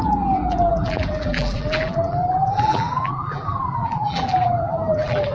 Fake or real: fake